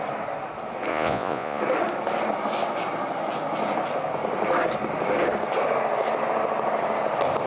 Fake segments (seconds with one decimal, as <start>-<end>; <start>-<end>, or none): 0.9-1.6

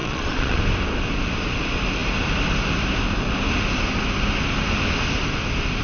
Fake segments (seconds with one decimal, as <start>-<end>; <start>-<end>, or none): 0.0-0.6

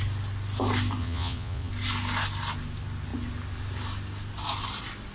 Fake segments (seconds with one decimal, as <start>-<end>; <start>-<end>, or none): 1.0-1.7

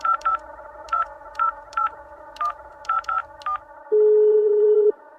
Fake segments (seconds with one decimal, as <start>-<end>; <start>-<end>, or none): 0.0-3.2; 4.3-5.2

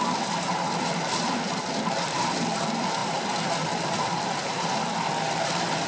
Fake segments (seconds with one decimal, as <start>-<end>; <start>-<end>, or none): none

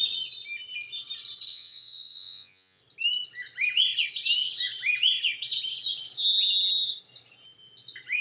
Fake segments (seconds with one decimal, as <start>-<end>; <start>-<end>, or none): 1.5-2.8

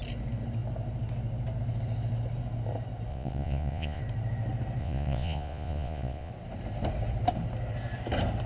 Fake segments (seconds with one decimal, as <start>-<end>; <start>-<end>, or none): 3.1-4.0; 4.8-6.3

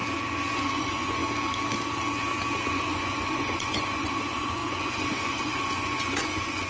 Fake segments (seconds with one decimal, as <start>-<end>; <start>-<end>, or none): 0.6-1.2; 2.7-6.7